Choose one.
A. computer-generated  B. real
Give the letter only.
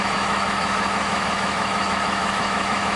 A